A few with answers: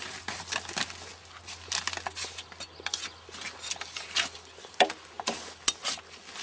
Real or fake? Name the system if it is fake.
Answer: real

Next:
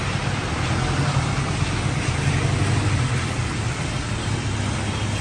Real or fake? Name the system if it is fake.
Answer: real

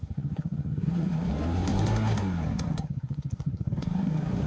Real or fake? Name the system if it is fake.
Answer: fake, codec, SNAC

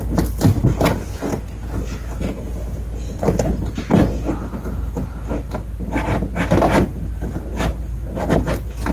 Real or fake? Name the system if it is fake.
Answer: real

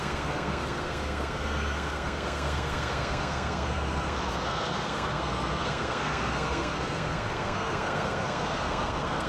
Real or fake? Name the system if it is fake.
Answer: fake, codec, SNAC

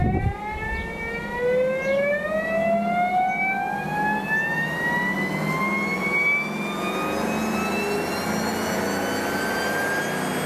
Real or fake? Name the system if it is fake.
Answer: real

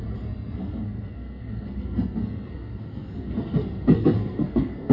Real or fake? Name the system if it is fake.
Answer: fake, codec, SNAC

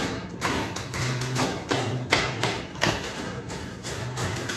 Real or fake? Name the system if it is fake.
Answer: fake, codec, SNAC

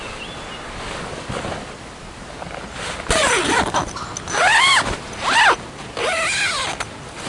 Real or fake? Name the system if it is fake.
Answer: real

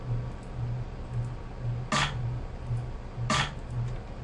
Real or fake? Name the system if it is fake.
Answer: real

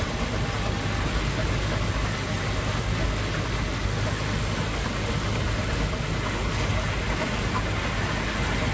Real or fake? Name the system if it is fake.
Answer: real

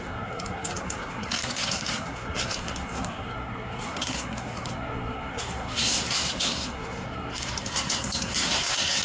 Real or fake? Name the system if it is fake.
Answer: fake, codec, SNAC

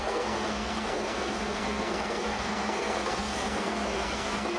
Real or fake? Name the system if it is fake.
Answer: fake, codec, SNAC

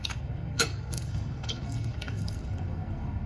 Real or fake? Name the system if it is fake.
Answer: fake, codec, SNAC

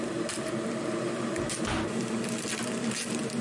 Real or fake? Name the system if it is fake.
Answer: real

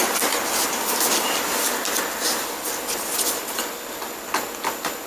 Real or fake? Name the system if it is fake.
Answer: real